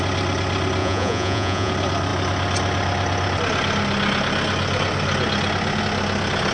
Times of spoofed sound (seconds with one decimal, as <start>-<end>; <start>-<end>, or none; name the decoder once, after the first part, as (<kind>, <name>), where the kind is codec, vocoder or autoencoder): 0.8-1.7 (vocoder, Vocos)